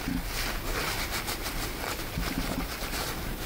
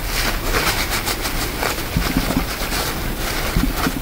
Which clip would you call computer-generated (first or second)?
first